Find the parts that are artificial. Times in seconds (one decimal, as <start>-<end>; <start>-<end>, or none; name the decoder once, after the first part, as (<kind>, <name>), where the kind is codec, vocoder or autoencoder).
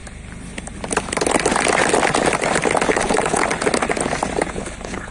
2.9-3.4 (codec, HILCodec); 4.5-5.1